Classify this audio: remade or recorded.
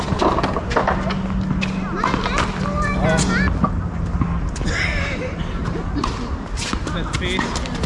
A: recorded